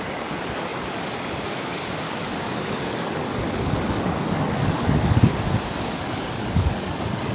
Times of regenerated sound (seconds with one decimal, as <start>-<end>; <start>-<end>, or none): 0.0-5.3; 5.8-7.3